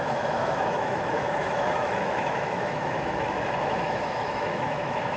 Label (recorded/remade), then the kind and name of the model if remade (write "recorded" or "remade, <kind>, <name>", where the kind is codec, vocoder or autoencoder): remade, autoencoder, DAC-VAE